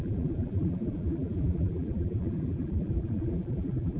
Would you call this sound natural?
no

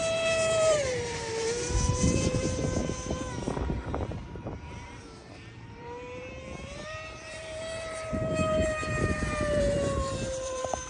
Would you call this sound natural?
no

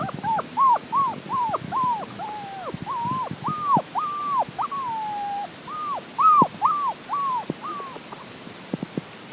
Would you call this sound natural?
yes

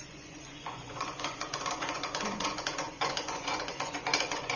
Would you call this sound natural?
no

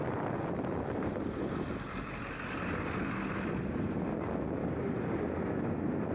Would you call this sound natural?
yes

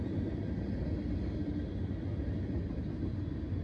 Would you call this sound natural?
yes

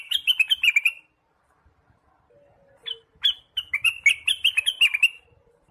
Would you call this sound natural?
yes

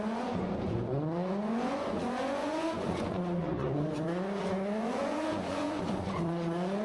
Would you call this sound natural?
no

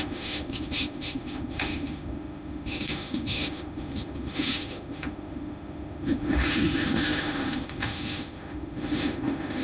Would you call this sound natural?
no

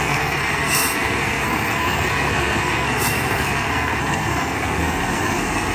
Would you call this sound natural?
no